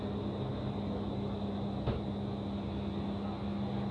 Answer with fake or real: real